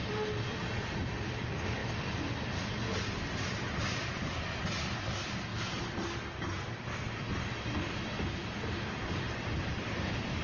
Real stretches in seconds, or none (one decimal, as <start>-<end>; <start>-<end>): 0.0-10.4

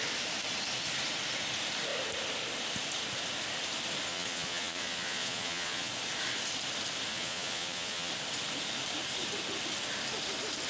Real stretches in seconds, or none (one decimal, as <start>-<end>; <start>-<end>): 0.0-4.1; 5.9-7.1; 8.1-10.7